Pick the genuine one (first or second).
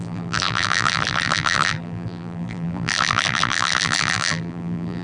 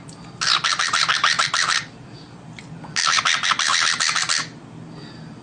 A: second